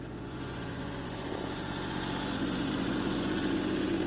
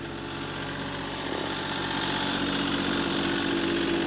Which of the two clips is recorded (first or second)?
second